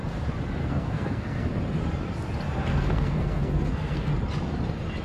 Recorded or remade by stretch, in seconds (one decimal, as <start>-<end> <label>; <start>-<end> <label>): 0.0-0.6 recorded; 0.6-1.5 remade; 1.5-2.7 recorded; 2.7-4.1 remade; 4.1-5.0 recorded

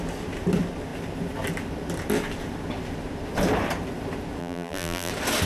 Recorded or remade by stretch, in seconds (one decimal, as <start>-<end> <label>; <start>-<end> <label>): 0.0-4.4 recorded; 4.4-5.1 remade; 5.1-5.5 recorded